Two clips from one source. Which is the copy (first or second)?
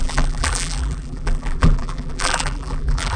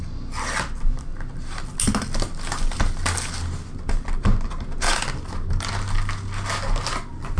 first